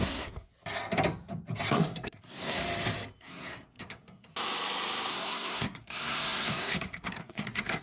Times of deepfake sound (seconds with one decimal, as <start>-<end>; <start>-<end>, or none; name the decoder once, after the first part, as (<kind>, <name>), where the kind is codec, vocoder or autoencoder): 0.0-0.5 (codec, SNAC); 1.7-2.6; 3.2-4.3; 5.1-7.8